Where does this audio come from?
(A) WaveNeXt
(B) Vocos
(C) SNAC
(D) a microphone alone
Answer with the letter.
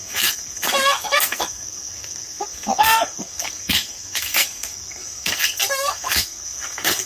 C